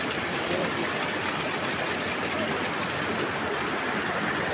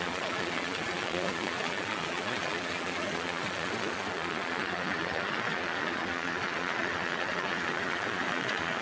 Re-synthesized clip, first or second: second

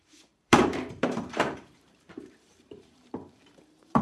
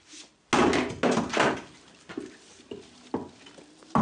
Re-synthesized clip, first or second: first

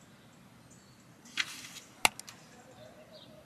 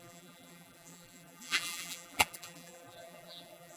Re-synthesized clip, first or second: second